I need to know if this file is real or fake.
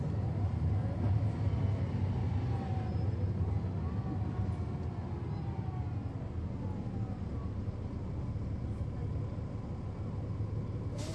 real